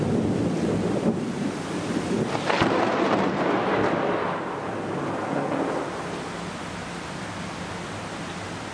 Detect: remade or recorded recorded